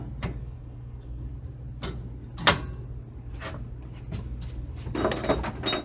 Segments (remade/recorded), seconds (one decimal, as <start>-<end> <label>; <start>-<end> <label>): 0.0-0.4 recorded; 0.4-1.3 remade; 1.3-5.8 recorded